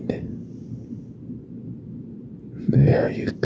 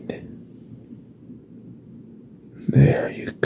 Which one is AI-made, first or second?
first